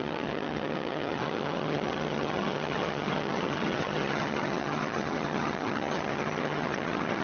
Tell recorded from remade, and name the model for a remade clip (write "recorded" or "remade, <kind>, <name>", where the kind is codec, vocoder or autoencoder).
remade, vocoder, HiFi-GAN